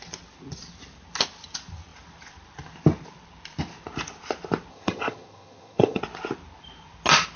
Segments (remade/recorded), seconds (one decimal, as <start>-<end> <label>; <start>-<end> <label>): 0.0-4.7 recorded; 4.7-6.0 remade; 6.0-7.4 recorded